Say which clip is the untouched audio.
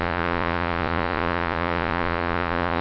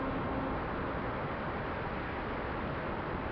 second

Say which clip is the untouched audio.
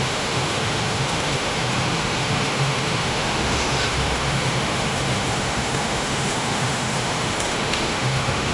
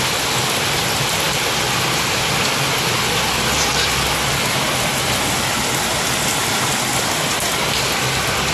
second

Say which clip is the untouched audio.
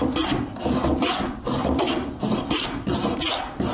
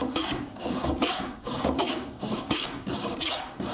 first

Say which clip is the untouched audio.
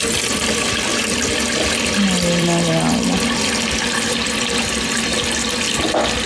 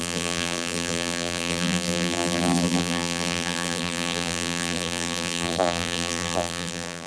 first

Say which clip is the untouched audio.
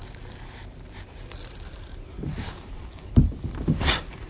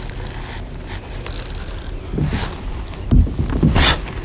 second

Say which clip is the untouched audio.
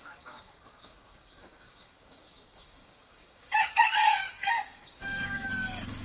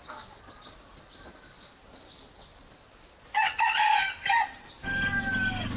second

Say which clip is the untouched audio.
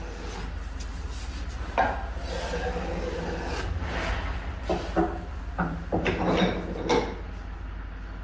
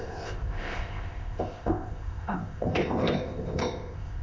first